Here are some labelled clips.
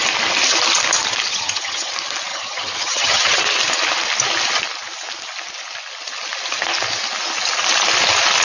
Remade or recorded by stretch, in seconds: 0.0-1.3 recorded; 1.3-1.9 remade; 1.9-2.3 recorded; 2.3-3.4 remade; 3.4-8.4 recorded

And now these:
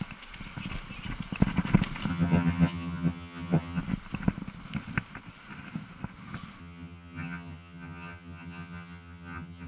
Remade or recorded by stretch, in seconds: 0.0-2.1 recorded; 2.1-3.8 remade; 3.8-6.6 recorded; 6.6-9.7 remade

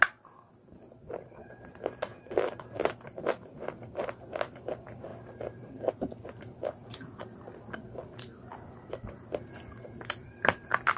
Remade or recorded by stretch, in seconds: 0.0-11.0 recorded

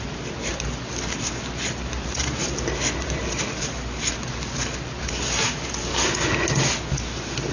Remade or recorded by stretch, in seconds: 0.0-7.5 recorded

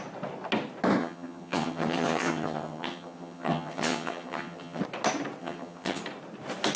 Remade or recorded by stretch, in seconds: 0.0-1.0 recorded; 1.0-4.8 remade; 4.8-5.4 recorded; 5.4-6.0 remade; 6.0-6.8 recorded

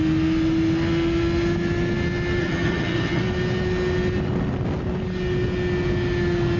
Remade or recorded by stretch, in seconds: 0.0-2.4 recorded; 2.4-3.2 remade; 3.2-6.6 recorded